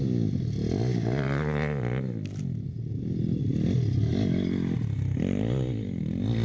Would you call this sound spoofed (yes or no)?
no